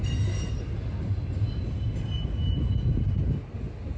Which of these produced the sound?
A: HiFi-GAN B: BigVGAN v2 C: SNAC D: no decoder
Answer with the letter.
D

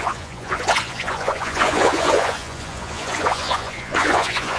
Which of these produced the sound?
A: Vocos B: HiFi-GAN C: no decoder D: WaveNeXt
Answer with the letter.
A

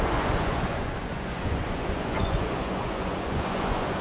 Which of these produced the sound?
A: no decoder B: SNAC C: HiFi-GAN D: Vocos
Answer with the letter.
D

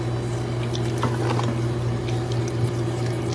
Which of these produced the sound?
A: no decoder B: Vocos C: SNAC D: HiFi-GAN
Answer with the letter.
A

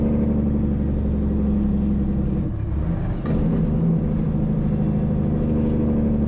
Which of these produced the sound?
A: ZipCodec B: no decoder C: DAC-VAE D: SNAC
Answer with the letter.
B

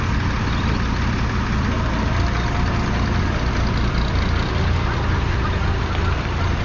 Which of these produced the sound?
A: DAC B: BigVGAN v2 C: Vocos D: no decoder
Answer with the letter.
D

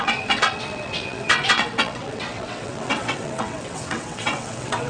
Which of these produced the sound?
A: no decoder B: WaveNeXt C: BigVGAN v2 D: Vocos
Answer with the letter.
B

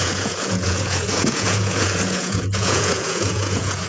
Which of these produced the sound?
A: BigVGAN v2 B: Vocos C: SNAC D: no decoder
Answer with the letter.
B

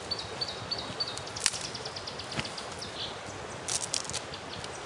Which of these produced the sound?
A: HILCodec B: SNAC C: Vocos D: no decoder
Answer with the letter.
D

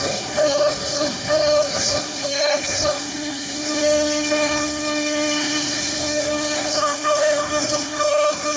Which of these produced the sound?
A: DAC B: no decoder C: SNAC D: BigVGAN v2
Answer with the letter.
C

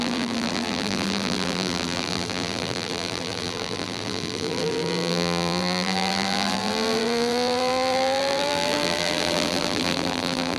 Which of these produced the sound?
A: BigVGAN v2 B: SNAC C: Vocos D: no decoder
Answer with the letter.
A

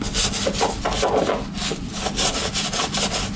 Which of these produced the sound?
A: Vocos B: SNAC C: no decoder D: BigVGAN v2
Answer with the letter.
C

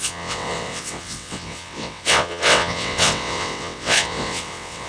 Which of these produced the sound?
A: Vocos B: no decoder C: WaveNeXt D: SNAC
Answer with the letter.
C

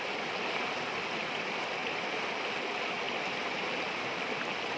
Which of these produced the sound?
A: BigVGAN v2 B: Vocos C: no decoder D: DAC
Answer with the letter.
C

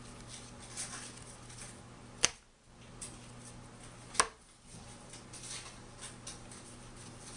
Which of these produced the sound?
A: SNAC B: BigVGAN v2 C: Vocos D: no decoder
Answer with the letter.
D